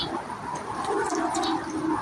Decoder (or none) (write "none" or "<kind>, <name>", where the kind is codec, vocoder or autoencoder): none